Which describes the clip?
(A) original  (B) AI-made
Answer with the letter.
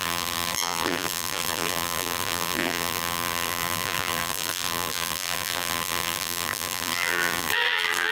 B